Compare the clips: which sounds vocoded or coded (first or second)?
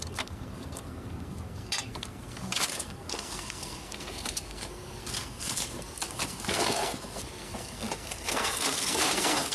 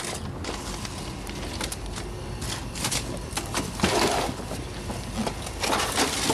first